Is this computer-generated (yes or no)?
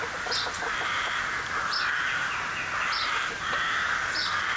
no